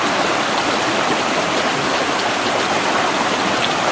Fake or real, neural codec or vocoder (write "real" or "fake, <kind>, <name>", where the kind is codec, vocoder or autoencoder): real